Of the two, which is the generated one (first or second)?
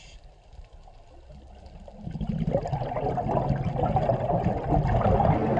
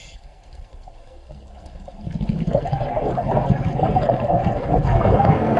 second